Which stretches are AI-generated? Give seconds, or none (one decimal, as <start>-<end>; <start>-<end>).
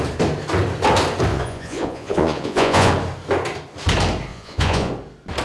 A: 1.3-2.9; 4.3-4.9